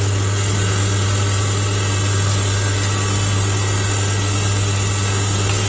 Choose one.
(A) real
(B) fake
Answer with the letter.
A